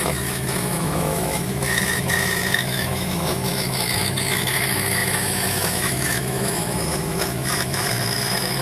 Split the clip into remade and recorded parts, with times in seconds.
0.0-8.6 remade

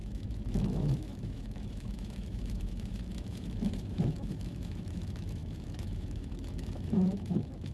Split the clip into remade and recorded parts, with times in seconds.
0.0-7.7 remade

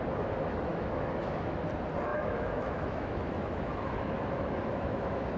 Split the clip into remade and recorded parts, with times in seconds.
0.0-0.7 recorded; 0.7-1.6 remade; 1.6-2.1 recorded; 2.1-5.4 remade

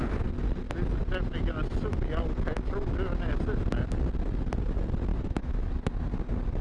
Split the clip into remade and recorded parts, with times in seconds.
0.0-5.1 recorded; 5.1-5.7 remade; 5.7-6.6 recorded